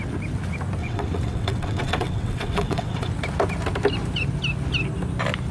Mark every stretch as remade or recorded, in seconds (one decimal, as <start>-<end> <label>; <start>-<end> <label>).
0.0-0.8 recorded; 0.8-3.1 remade; 3.1-5.5 recorded